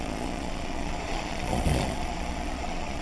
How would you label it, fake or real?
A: fake